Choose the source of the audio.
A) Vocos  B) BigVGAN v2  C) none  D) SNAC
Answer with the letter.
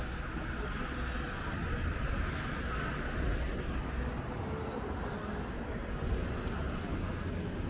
C